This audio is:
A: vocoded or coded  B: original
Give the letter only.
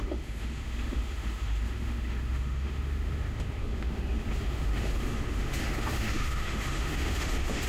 A